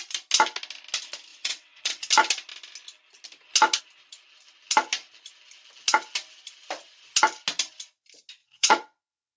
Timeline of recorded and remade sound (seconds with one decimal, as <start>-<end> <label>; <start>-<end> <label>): 0.0-1.3 recorded; 1.3-2.1 remade; 2.1-8.4 recorded; 8.4-9.4 remade